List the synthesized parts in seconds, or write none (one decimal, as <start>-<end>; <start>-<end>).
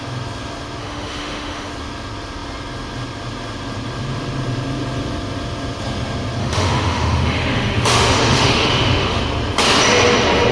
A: 0.8-1.7; 6.4-9.2